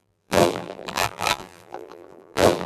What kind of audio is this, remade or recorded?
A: remade